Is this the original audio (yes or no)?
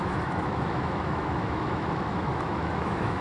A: no